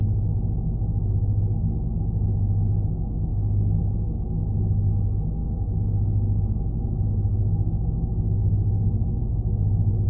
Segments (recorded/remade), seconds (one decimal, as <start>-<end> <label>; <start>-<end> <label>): 0.0-3.3 recorded; 3.3-3.8 remade; 3.8-5.4 recorded; 5.4-6.6 remade; 6.6-10.1 recorded